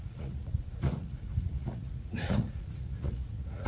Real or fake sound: fake